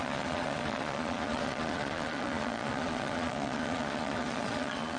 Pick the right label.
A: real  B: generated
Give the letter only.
B